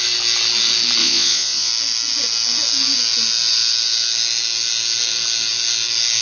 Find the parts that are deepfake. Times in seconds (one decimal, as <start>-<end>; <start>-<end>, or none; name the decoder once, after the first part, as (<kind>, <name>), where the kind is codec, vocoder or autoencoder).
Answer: 1.0-1.7 (vocoder, Vocos)